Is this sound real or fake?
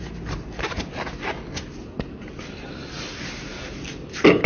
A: real